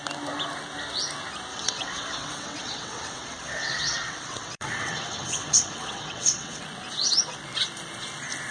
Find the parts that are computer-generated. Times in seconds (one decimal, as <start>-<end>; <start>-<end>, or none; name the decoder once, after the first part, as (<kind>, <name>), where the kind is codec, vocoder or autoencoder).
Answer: 1.5-6.6 (vocoder, WaveNeXt)